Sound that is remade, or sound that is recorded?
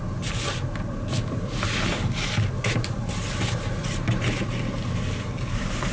recorded